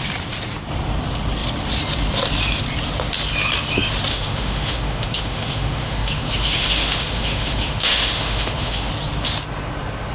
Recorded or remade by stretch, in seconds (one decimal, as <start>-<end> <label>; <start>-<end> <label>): 0.0-4.1 recorded; 4.1-8.9 remade; 8.9-10.1 recorded